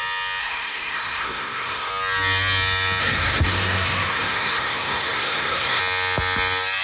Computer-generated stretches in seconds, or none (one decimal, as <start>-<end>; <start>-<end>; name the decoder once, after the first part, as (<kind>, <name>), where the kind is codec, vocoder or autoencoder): 0.4-1.9 (codec, SNAC); 3.0-5.8